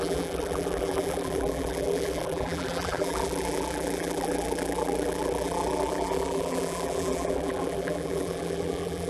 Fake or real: fake